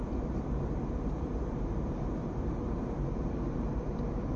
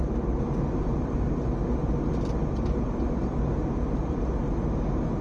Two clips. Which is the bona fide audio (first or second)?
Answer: second